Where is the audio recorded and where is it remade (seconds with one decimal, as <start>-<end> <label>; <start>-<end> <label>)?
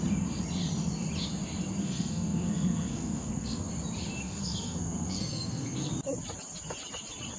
0.0-1.8 recorded; 1.8-3.7 remade; 3.7-4.2 recorded; 4.2-5.9 remade; 5.9-7.4 recorded